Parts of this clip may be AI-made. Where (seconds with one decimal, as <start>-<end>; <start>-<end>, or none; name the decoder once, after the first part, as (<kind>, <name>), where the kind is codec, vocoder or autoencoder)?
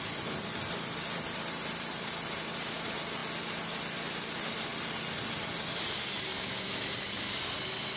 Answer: 0.0-3.2 (vocoder, BigVGAN v2); 3.7-4.7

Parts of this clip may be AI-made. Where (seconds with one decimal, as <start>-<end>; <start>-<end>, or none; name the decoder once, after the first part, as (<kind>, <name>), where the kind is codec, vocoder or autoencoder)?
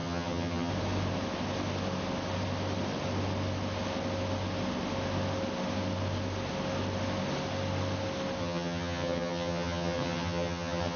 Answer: 0.0-0.7 (vocoder, HiFi-GAN); 8.4-11.0